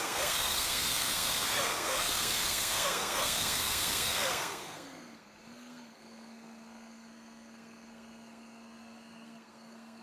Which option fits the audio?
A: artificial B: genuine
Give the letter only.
A